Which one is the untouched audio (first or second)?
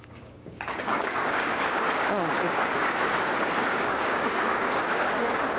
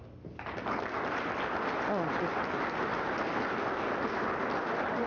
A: second